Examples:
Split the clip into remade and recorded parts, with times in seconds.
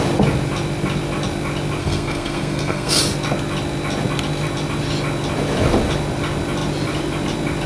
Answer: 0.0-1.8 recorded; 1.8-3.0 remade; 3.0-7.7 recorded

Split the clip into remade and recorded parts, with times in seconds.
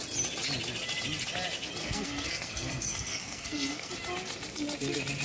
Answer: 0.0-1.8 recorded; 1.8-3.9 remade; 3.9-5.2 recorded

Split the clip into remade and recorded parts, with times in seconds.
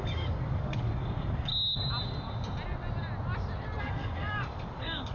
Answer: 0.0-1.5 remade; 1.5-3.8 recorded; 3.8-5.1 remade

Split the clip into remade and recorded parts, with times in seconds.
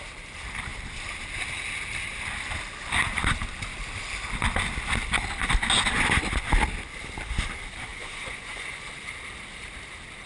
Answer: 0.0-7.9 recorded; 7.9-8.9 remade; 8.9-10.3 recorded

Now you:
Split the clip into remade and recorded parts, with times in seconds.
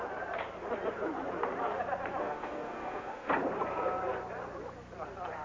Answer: 0.0-2.2 recorded; 2.2-3.3 remade; 3.3-5.4 recorded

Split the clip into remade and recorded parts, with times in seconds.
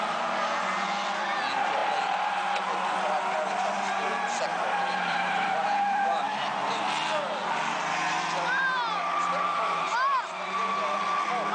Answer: 0.0-4.5 recorded; 4.5-6.9 remade; 6.9-11.5 recorded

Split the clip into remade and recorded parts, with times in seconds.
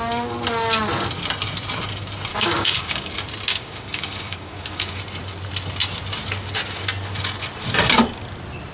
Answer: 0.0-2.3 recorded; 2.3-3.1 remade; 3.1-3.5 recorded; 3.5-5.0 remade; 5.0-8.7 recorded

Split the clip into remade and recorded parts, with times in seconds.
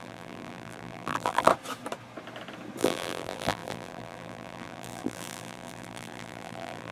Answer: 0.0-1.5 remade; 1.5-2.8 recorded; 2.8-6.9 remade